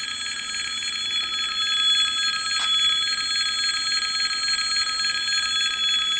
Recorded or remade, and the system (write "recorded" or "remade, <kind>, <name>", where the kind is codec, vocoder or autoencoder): recorded